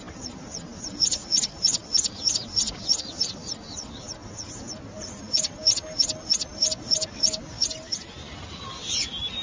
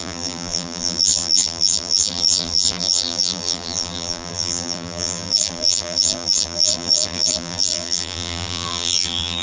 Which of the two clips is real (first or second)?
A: first